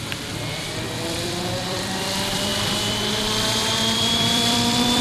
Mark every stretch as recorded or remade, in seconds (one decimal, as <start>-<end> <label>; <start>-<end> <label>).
0.0-5.0 remade